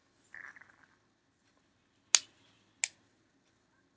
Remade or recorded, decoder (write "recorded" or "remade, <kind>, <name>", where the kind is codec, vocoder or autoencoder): recorded